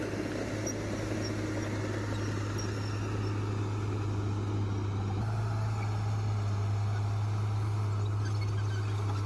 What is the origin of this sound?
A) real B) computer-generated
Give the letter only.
A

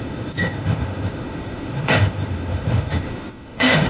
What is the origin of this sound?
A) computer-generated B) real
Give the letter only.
A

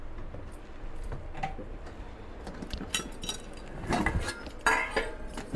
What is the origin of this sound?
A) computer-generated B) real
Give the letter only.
A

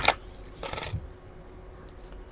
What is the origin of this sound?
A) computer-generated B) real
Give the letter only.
B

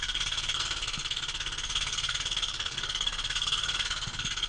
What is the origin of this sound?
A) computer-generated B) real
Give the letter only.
A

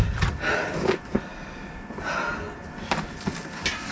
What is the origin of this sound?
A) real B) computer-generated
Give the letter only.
A